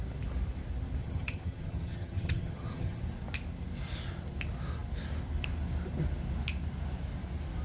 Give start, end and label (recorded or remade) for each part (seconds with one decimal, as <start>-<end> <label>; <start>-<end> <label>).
0.0-1.0 recorded; 1.0-3.0 remade; 3.0-7.6 recorded